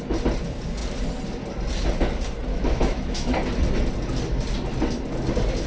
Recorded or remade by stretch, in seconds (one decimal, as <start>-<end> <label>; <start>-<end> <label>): 0.0-2.5 recorded; 2.5-3.3 remade; 3.3-5.7 recorded